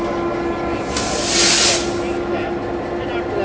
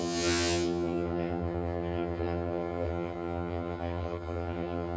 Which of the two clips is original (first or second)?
first